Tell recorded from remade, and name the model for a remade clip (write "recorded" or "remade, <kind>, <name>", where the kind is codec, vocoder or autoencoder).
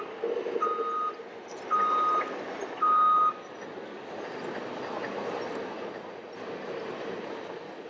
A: recorded